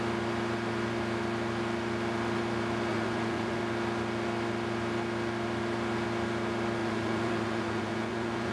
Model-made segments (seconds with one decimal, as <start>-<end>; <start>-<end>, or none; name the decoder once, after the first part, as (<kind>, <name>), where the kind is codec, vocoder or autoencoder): 2.9-3.6 (vocoder, Vocos); 6.8-8.5